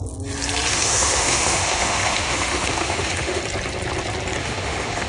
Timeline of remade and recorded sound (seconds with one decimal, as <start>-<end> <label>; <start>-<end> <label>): 0.0-0.7 recorded; 0.7-3.4 remade; 3.4-4.4 recorded; 4.4-5.1 remade